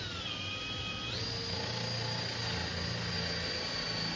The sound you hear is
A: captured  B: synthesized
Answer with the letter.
A